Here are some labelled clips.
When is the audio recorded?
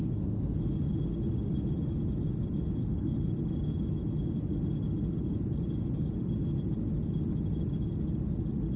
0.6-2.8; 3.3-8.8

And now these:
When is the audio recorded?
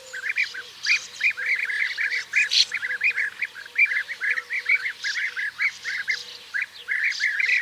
0.0-7.6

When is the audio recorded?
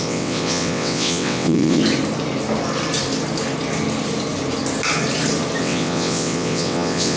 1.8-5.6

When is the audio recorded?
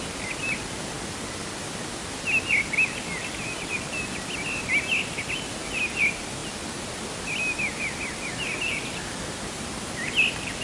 0.0-10.6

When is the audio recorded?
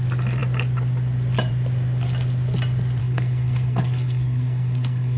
0.0-3.0